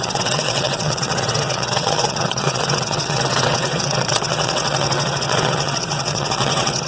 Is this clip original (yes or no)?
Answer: no